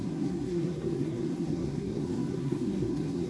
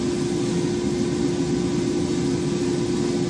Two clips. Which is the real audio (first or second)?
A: second